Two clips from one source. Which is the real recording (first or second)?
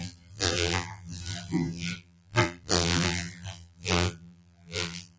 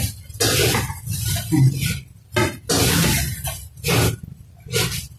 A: second